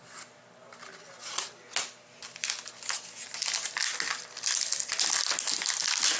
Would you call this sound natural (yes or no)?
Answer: yes